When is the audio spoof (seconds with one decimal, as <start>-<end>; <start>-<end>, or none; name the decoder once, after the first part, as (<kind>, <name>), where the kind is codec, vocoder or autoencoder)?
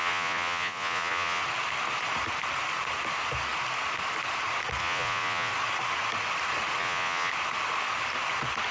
0.0-1.4 (vocoder, Vocos); 4.8-5.5; 6.8-7.3